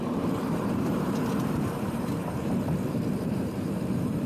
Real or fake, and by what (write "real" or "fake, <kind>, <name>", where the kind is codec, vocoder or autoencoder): fake, vocoder, BigVGAN v2